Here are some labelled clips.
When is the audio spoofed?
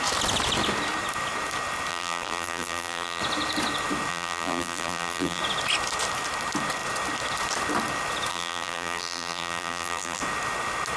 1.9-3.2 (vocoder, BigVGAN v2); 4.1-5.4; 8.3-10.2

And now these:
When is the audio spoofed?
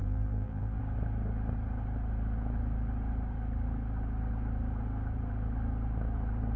0.0-0.8 (vocoder, BigVGAN v2)